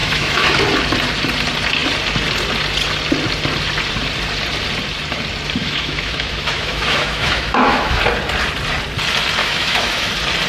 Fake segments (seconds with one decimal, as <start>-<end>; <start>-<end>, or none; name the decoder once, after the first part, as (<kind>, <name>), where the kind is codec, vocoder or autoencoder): 0.0-0.6 (autoencoder, DAC-VAE); 5.6-8.0; 9.4-10.1